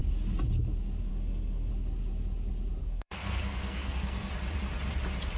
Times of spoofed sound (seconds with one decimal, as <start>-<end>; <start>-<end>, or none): 1.1-1.7; 2.8-4.3